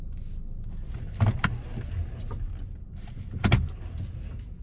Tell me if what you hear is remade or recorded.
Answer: recorded